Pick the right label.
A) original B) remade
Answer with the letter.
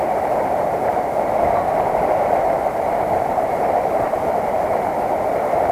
B